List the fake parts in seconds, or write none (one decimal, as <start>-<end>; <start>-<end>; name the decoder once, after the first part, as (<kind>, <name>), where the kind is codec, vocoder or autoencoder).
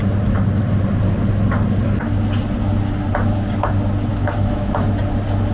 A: 4.1-4.8 (autoencoder, DAC-VAE)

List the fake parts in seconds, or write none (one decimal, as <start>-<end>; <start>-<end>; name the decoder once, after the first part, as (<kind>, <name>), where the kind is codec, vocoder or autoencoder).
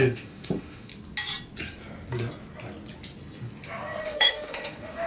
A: 0.0-0.9 (autoencoder, DAC-VAE); 4.0-5.1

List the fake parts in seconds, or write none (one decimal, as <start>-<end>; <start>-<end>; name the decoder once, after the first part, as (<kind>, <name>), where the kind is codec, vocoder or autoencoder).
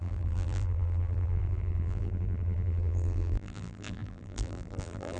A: 0.0-5.2 (vocoder, BigVGAN v2)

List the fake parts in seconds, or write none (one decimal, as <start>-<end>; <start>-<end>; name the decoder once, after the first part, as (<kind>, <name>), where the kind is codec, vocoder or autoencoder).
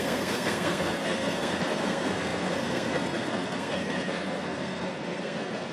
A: 0.0-5.7 (codec, SNAC)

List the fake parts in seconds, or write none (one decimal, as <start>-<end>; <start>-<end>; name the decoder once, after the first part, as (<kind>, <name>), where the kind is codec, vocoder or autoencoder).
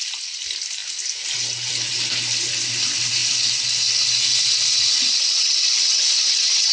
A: none